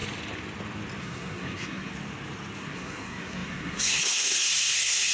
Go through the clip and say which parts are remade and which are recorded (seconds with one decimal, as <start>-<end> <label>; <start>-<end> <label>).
0.0-1.0 recorded; 1.0-1.9 remade; 1.9-2.6 recorded; 2.6-5.1 remade